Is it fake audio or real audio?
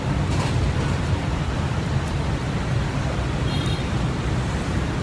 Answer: fake